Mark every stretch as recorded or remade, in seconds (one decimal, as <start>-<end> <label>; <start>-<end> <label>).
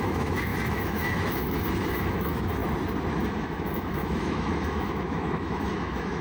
0.0-2.6 remade; 2.6-3.1 recorded; 3.1-6.2 remade